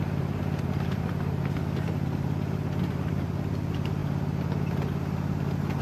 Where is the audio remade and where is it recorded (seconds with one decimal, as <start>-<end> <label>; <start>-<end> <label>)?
0.0-5.8 recorded